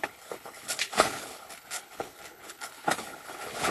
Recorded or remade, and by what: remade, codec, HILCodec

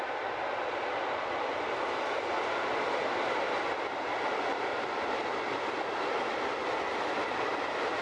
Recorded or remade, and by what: recorded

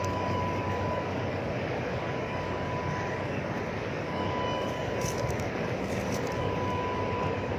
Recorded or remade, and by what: remade, codec, DAC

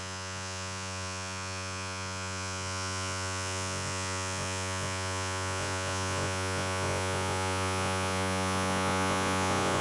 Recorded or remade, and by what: remade, vocoder, Vocos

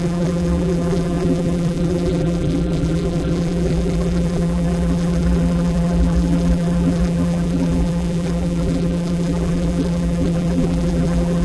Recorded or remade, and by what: remade, vocoder, BigVGAN v2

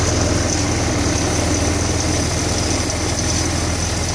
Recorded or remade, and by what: recorded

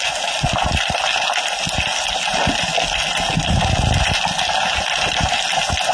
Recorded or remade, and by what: recorded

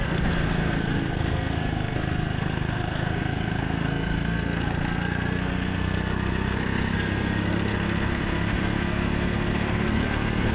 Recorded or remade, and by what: remade, codec, SNAC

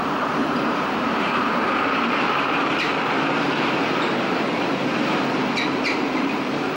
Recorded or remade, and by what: remade, vocoder, BigVGAN v2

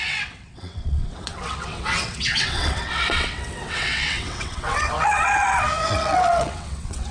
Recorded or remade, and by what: remade, vocoder, WaveNeXt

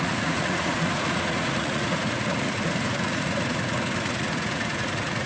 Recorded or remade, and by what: remade, vocoder, Vocos